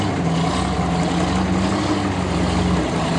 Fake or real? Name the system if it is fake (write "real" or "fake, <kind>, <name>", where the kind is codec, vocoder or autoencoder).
real